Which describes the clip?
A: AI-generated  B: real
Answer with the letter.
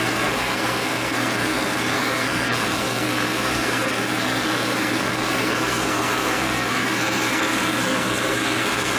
A